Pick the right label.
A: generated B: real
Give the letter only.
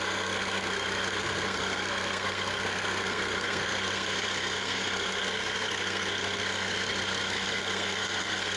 A